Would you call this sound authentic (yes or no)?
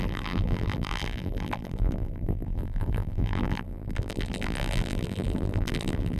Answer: no